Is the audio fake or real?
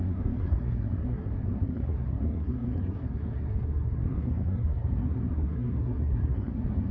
fake